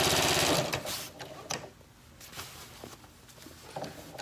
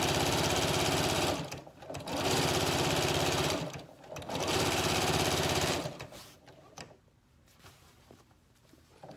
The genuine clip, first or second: first